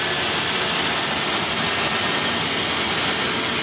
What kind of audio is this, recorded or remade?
recorded